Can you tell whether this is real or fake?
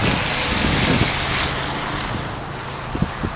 real